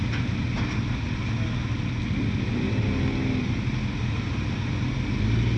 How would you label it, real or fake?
real